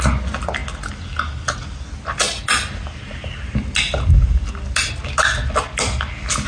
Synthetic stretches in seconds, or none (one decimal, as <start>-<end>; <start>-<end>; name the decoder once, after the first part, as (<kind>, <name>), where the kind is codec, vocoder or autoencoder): none